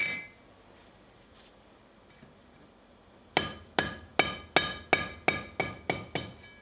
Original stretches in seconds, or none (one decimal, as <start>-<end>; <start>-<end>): 0.0-6.6